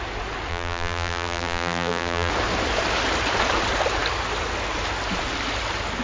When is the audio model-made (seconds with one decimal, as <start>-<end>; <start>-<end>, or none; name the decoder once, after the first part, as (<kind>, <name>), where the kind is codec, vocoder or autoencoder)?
0.5-2.3 (vocoder, BigVGAN v2)